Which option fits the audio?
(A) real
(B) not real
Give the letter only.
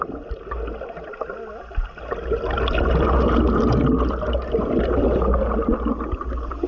A